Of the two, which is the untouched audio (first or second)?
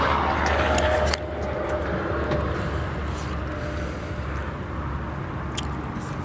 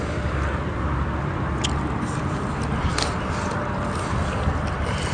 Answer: first